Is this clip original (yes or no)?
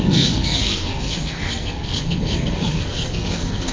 no